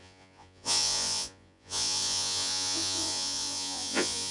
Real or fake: fake